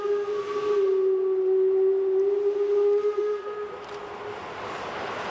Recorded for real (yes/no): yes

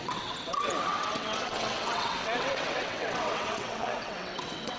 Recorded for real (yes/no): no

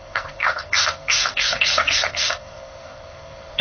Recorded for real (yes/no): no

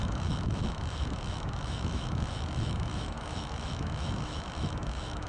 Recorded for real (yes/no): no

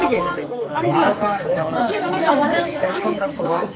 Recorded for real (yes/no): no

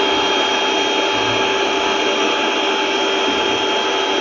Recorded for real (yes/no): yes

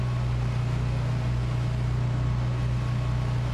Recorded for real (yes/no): yes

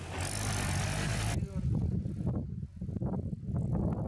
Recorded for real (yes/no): yes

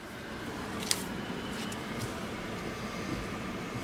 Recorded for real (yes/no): yes